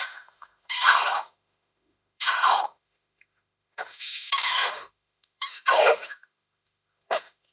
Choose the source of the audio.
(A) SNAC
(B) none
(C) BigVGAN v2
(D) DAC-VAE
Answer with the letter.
D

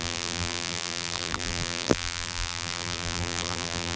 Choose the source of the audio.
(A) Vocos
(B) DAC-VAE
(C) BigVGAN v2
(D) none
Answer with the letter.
C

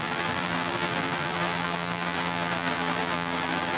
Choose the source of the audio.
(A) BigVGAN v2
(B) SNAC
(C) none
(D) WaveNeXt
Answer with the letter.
A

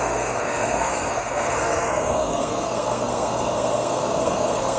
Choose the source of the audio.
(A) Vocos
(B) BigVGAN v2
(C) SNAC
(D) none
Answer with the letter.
C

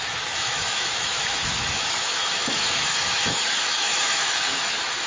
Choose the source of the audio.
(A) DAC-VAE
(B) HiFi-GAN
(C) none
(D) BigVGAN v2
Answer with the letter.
A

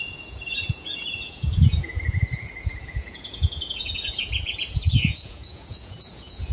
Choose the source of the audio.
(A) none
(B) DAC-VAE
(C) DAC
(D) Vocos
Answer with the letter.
D